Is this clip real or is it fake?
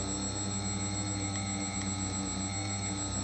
real